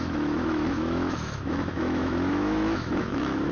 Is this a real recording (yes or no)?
no